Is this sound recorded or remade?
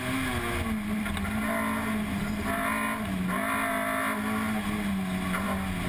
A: recorded